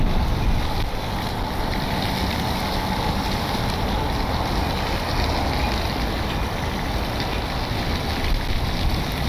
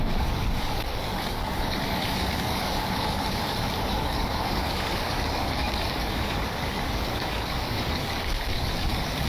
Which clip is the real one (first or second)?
first